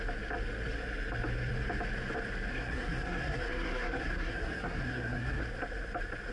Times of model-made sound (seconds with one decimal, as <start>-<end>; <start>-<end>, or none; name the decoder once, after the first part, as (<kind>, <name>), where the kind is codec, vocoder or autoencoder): 2.5-5.4 (codec, SNAC)